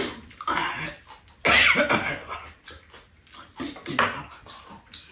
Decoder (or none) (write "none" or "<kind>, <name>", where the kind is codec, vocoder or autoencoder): none